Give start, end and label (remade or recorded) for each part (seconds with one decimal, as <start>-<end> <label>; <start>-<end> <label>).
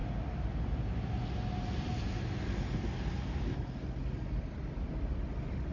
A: 0.0-5.7 recorded